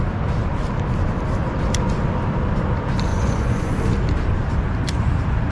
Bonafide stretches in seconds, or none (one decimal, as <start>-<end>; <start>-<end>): 0.0-3.1; 3.7-5.5